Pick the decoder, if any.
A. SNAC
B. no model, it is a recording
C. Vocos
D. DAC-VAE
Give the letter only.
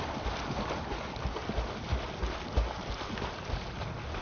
B